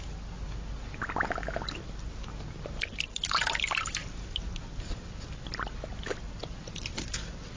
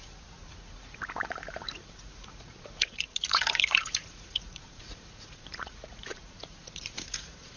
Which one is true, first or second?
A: first